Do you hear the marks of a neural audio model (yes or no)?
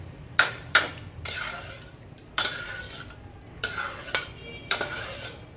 yes